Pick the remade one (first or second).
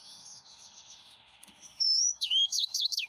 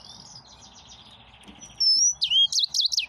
first